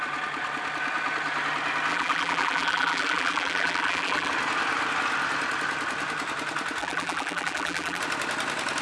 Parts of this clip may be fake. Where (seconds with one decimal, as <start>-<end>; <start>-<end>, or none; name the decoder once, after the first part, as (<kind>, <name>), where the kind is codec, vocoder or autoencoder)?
1.9-4.3 (vocoder, BigVGAN v2); 6.8-8.0